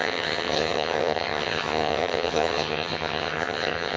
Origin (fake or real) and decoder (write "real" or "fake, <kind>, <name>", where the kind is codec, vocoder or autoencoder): fake, vocoder, HiFi-GAN